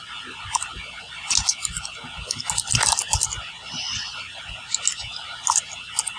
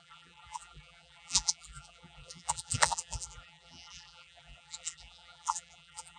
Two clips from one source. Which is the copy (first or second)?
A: second